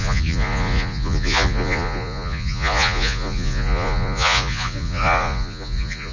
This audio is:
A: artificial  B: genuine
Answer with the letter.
A